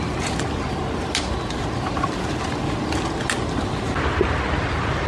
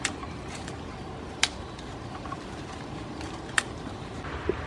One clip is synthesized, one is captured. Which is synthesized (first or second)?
second